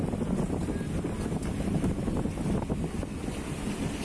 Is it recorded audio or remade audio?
recorded